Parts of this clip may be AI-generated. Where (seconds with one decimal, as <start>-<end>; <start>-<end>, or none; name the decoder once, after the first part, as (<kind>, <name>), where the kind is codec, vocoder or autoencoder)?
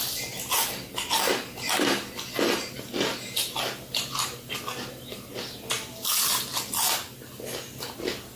none